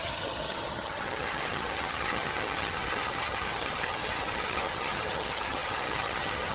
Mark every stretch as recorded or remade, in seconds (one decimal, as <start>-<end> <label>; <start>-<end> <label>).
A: 0.0-6.5 remade